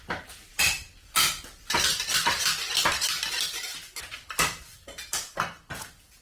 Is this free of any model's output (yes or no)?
yes